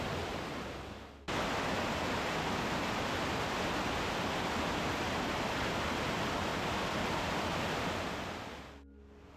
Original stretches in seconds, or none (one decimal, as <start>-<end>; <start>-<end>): 0.0-6.5; 7.3-9.4